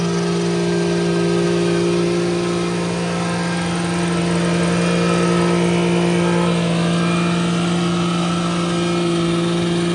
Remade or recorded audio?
recorded